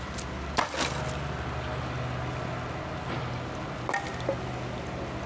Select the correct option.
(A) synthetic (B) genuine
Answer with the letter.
B